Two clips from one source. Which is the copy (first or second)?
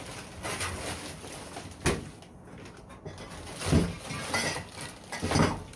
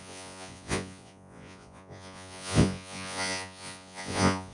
second